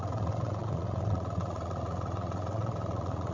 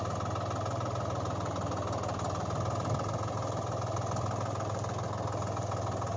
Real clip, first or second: second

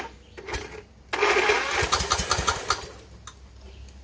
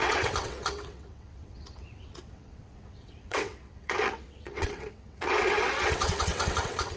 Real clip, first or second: first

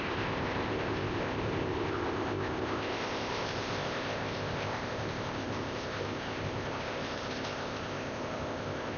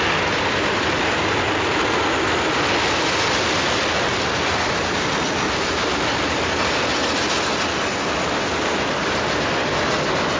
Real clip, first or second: second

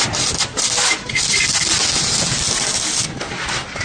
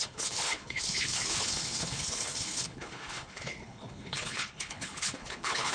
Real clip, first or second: first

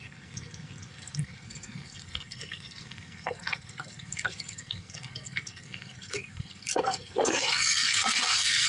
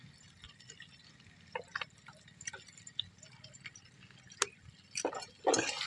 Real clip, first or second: second